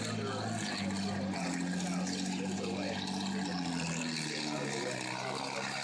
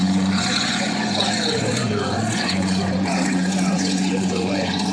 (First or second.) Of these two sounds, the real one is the first